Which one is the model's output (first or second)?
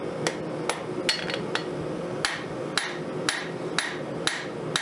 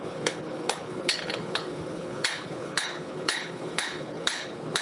second